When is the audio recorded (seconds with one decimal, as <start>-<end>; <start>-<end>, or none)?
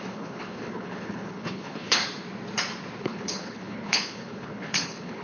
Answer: 2.0-3.0